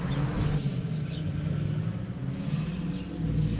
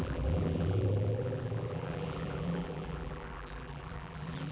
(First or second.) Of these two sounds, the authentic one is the first